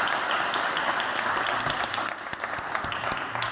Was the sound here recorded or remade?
recorded